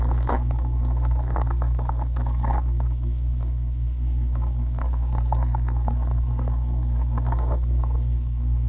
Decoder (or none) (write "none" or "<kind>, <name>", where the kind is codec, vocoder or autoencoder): codec, SNAC